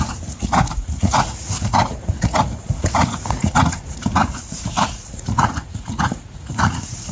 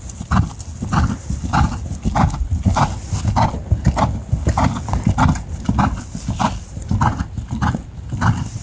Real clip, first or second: second